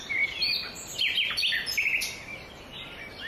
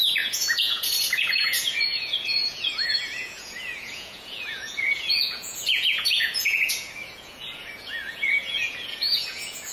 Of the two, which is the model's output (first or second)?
second